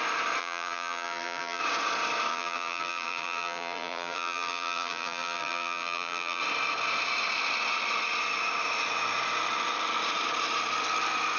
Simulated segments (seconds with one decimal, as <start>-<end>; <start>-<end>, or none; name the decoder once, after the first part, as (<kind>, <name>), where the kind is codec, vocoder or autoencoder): 0.4-1.6 (vocoder, BigVGAN v2); 2.3-6.4